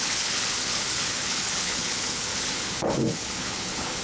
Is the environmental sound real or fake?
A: fake